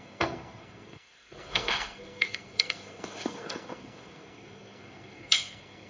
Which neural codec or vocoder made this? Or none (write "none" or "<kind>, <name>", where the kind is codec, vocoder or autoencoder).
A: codec, SNAC